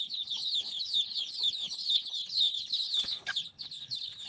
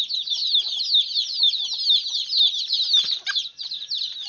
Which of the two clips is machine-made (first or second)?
first